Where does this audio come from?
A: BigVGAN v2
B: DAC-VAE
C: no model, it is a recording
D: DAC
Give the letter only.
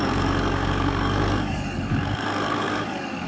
D